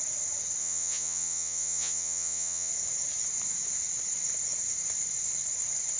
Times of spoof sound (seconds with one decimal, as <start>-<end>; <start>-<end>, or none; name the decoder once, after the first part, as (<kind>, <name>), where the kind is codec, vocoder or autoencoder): 0.6-2.7 (vocoder, Vocos)